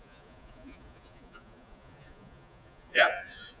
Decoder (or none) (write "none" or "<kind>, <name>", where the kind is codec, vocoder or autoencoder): vocoder, Vocos